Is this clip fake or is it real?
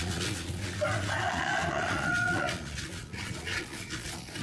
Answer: fake